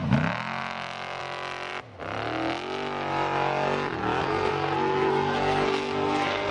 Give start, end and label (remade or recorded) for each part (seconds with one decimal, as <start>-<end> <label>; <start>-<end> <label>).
0.0-4.2 recorded; 4.2-6.5 remade